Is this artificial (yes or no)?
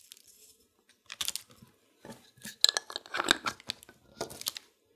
no